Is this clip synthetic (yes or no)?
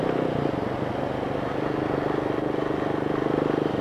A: no